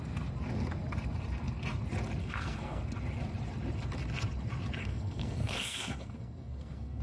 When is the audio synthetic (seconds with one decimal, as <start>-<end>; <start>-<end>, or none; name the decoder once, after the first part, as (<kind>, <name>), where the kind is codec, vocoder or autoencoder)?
2.2-2.8 (codec, SNAC); 4.8-7.0